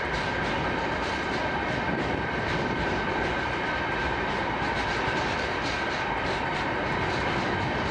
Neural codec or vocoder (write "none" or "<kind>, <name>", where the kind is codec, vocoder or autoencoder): none